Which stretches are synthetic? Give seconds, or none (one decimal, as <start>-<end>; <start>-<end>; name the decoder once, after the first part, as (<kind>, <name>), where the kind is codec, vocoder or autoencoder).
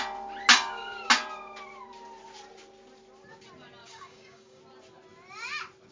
0.5-1.1 (codec, DAC); 3.8-4.6